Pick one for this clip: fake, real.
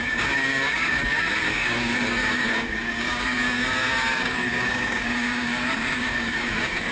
fake